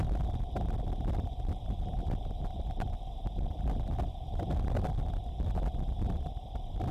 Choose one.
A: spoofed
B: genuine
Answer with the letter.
B